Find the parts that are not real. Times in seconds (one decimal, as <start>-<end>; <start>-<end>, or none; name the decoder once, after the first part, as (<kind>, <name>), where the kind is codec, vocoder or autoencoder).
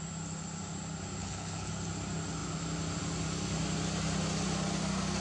1.2-1.7 (codec, HILCodec)